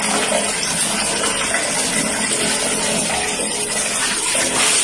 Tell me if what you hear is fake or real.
real